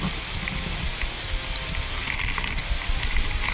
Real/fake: real